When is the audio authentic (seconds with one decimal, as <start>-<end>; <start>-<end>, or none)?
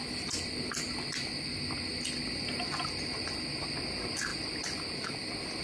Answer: 0.8-4.3